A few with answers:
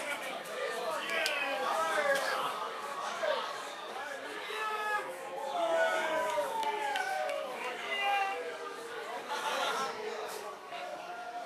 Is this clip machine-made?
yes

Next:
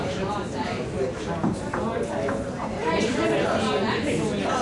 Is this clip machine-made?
no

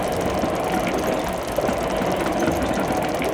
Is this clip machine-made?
no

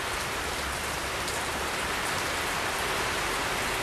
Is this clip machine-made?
yes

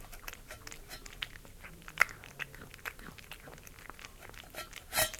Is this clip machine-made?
no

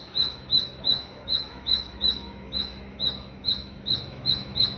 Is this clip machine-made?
yes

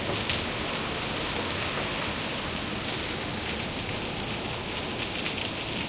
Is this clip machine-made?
no